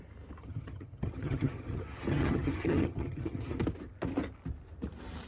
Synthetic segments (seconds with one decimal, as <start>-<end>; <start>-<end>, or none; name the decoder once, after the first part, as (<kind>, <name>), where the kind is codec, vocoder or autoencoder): 0.4-3.6 (vocoder, HiFi-GAN)